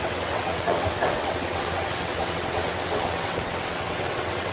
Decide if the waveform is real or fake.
fake